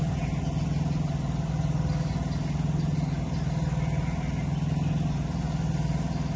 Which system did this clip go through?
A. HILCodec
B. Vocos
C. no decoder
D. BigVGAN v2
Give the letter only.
C